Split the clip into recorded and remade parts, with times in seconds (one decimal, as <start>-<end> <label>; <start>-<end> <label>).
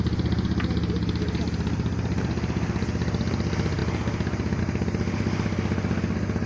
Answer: 0.0-6.5 recorded